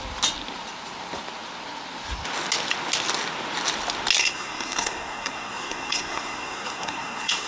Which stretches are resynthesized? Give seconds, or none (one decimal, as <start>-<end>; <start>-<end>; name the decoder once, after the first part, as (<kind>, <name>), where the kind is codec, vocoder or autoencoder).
4.2-7.5 (codec, SNAC)